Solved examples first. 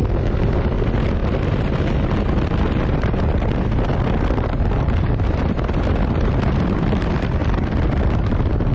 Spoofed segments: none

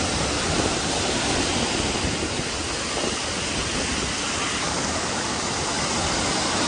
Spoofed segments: 4.6-5.4 (codec, DAC)

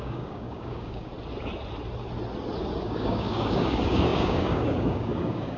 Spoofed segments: 0.0-1.1 (codec, DAC); 2.8-5.6